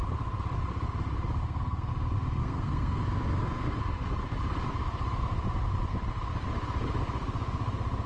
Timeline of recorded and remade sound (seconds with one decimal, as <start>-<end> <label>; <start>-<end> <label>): 0.0-1.4 recorded; 1.4-1.9 remade; 1.9-2.4 recorded; 2.4-3.0 remade; 3.0-8.1 recorded